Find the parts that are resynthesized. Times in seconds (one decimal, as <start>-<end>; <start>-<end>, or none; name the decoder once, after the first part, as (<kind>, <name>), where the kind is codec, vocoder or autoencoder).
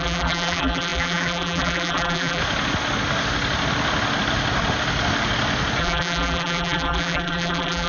0.0-2.4 (vocoder, BigVGAN v2); 5.8-7.9